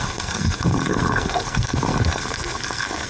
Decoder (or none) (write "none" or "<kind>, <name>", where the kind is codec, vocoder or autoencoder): codec, SNAC